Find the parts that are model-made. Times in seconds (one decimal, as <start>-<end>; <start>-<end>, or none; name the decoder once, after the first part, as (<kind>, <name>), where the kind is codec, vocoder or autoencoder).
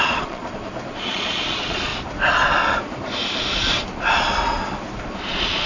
0.0-0.4 (vocoder, Vocos); 1.1-1.9; 5.3-5.7